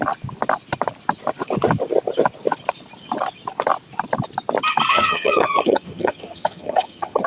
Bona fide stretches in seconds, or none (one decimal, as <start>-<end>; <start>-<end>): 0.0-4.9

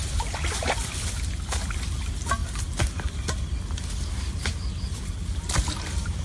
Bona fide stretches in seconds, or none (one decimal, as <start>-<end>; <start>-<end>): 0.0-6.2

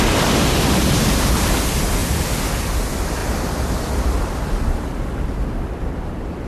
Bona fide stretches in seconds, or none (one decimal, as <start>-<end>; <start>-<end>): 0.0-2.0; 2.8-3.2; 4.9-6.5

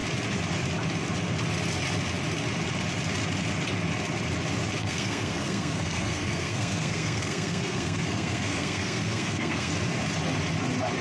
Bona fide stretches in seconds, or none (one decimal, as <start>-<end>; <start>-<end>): 0.0-4.8; 9.7-11.0

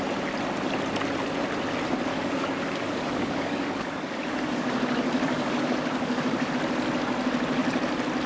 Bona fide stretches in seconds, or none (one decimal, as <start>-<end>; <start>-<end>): 0.0-2.1; 6.5-8.3

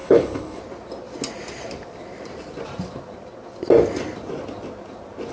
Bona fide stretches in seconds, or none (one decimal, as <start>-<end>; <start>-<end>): 0.6-5.3